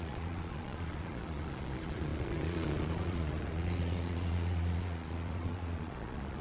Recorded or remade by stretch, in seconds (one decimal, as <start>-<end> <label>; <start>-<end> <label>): 0.0-6.4 remade